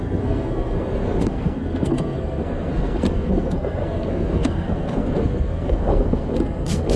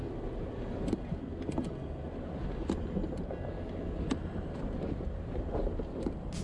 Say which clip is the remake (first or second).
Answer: first